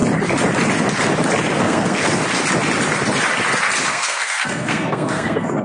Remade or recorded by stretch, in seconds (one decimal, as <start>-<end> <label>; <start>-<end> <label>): 0.0-1.6 recorded; 1.6-2.2 remade; 2.2-3.9 recorded; 3.9-5.6 remade